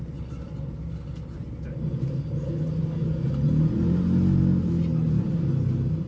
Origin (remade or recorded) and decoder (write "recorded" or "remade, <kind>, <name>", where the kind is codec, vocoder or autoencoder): recorded